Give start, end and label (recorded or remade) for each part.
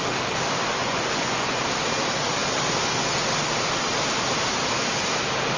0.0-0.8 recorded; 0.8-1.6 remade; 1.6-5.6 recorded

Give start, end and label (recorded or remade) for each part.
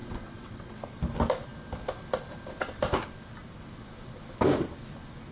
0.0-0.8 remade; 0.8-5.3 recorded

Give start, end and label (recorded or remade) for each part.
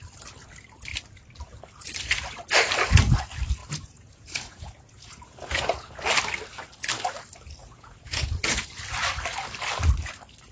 0.0-3.6 recorded; 3.6-6.0 remade; 6.0-7.6 recorded; 7.6-8.6 remade; 8.6-10.5 recorded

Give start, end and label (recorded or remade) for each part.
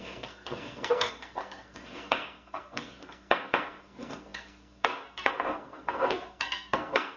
0.0-7.2 remade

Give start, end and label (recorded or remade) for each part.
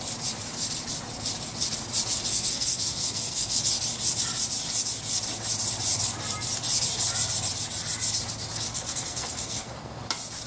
0.0-2.3 recorded; 2.3-3.6 remade; 3.6-8.7 recorded; 8.7-10.0 remade; 10.0-10.5 recorded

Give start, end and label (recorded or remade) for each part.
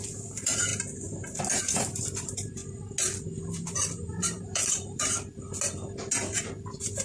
0.0-0.7 remade; 0.7-1.6 recorded; 1.6-2.6 remade; 2.6-4.0 recorded; 4.0-5.5 remade; 5.5-6.2 recorded; 6.2-7.0 remade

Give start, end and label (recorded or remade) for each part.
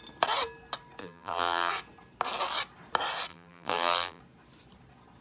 0.0-1.0 recorded; 1.0-1.7 remade; 1.7-3.3 recorded; 3.3-4.2 remade; 4.2-5.2 recorded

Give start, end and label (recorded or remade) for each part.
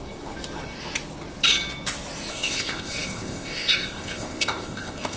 0.0-2.3 recorded; 2.3-5.2 remade